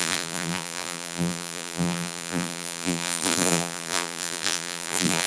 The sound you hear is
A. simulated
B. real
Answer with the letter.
A